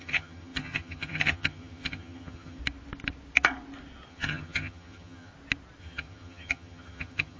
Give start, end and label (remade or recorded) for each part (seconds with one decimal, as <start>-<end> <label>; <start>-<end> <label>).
0.0-2.6 remade; 2.6-4.1 recorded; 4.1-5.3 remade; 5.3-5.8 recorded; 5.8-7.4 remade